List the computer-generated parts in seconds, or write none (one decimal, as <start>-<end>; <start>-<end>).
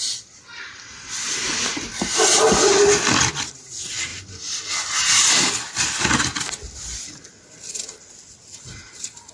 none